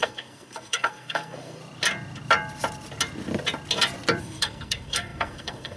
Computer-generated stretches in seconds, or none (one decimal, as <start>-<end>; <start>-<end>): 0.0-1.6; 4.2-5.8